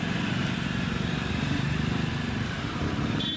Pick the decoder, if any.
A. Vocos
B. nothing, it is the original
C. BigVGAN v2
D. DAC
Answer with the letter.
C